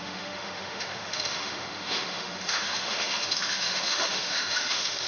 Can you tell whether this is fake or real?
fake